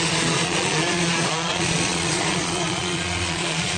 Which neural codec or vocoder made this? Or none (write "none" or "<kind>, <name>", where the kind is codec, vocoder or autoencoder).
vocoder, Vocos